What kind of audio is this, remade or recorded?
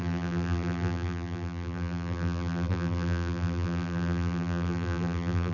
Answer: remade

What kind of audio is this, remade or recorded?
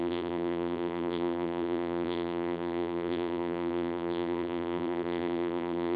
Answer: remade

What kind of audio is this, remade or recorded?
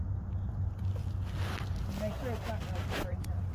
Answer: recorded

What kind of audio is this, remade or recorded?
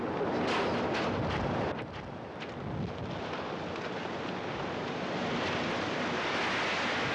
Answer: recorded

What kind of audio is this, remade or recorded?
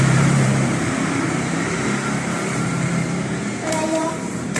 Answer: remade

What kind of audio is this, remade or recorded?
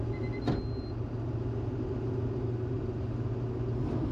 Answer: recorded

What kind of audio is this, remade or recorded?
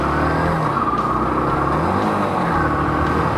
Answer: recorded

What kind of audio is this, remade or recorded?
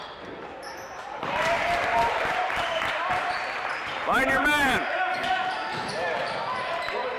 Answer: remade